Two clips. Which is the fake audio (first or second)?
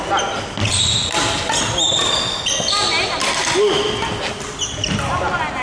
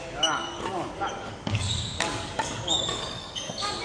second